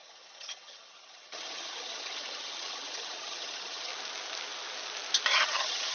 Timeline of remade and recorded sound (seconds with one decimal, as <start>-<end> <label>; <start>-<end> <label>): 0.0-3.9 remade; 3.9-5.3 recorded; 5.3-5.9 remade